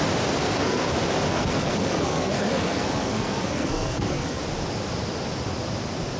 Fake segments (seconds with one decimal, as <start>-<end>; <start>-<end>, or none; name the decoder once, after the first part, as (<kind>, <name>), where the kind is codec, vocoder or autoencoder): 0.4-0.9 (codec, SNAC); 1.3-4.4